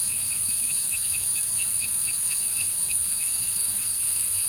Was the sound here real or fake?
fake